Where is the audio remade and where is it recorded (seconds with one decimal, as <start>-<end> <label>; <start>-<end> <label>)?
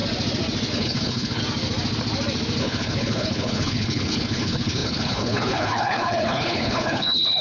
0.0-0.7 recorded; 0.7-1.4 remade; 1.4-2.6 recorded; 2.6-7.4 remade